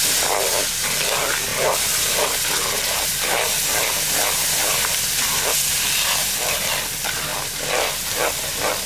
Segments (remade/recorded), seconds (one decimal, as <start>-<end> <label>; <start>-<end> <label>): 0.0-1.5 recorded; 1.5-6.7 remade; 6.7-8.9 recorded

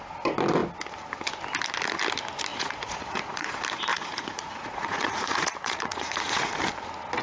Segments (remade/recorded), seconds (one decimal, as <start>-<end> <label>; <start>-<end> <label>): 0.0-2.5 recorded; 2.5-3.5 remade; 3.5-3.9 recorded; 3.9-6.5 remade; 6.5-7.2 recorded

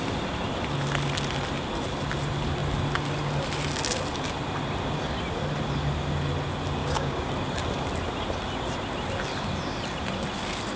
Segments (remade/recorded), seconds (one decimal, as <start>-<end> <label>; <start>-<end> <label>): 0.0-6.8 recorded; 6.8-7.3 remade; 7.3-10.8 recorded

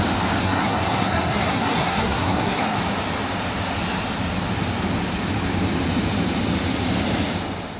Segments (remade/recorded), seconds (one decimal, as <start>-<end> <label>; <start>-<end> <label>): 0.0-0.4 recorded; 0.4-2.8 remade; 2.8-7.8 recorded

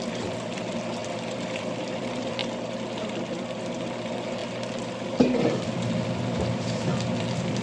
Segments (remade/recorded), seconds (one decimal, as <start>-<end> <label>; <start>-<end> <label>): 0.0-2.4 remade; 2.4-3.0 recorded; 3.0-4.4 remade; 4.4-5.1 recorded; 5.1-7.6 remade

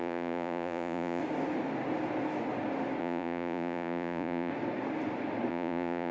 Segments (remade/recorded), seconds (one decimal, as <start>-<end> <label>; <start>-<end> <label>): 0.0-1.2 remade; 1.2-3.0 recorded; 3.0-4.5 remade; 4.5-5.5 recorded; 5.5-6.1 remade

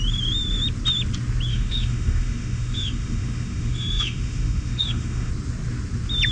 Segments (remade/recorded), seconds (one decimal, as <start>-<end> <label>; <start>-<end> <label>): 0.0-1.5 recorded; 1.5-5.3 remade; 5.3-6.3 recorded

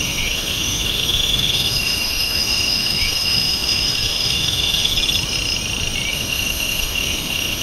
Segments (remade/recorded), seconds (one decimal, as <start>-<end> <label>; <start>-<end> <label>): 0.0-4.9 remade; 4.9-6.1 recorded; 6.1-7.6 remade